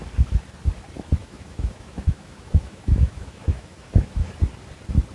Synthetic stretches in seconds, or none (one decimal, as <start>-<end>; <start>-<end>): 1.2-4.3